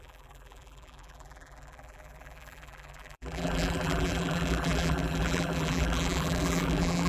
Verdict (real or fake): fake